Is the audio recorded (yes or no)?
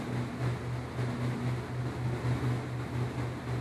yes